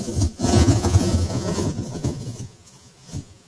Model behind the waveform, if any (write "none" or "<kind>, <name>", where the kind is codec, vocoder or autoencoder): vocoder, Vocos